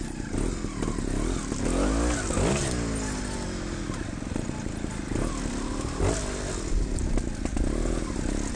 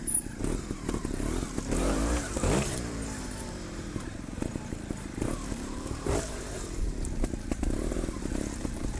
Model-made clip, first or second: second